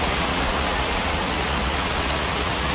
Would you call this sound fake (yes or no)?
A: yes